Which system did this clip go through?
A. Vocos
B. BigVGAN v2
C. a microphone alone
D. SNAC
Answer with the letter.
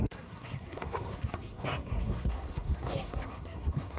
D